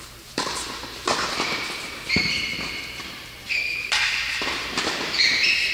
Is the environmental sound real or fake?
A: fake